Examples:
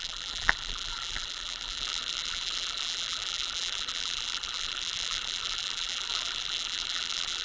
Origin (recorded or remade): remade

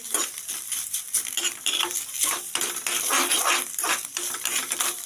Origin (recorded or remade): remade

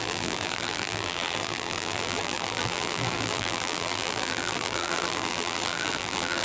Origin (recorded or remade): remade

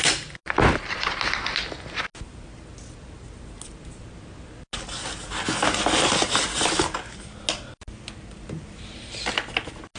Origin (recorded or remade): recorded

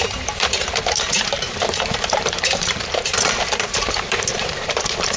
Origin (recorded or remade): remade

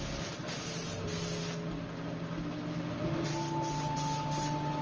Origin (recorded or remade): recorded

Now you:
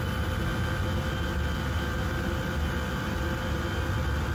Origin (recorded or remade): recorded